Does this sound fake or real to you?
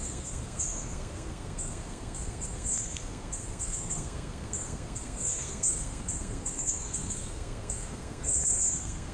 fake